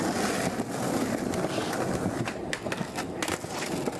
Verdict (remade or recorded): recorded